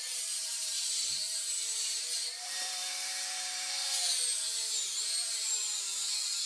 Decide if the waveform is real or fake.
fake